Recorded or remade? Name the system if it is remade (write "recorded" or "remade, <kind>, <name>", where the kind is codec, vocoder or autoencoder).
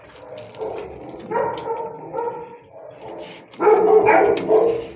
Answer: recorded